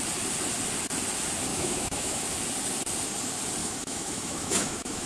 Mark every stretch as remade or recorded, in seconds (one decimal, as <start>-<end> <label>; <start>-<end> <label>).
0.0-1.5 recorded; 1.5-2.2 remade; 2.2-3.6 recorded; 3.6-5.1 remade